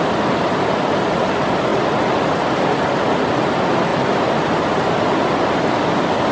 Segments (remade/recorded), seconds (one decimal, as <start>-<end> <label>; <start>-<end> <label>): 0.0-6.3 recorded

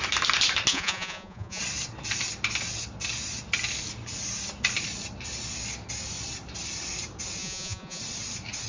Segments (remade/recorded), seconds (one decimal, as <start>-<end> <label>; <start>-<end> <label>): 0.0-0.7 recorded; 0.7-1.6 remade; 1.6-7.4 recorded; 7.4-8.0 remade; 8.0-8.7 recorded

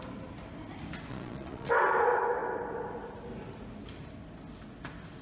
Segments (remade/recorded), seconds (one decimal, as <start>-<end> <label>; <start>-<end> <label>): 0.0-1.1 recorded; 1.1-1.7 remade; 1.7-5.2 recorded